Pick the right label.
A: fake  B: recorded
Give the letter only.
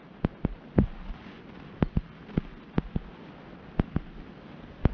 B